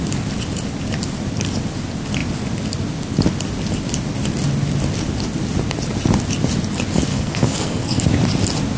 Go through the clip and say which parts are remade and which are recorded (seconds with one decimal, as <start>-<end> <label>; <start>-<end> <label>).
0.0-7.1 recorded; 7.1-8.0 remade; 8.0-8.8 recorded